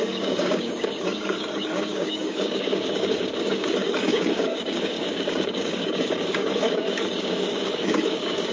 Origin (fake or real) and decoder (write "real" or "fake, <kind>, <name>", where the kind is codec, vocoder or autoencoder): fake, codec, DAC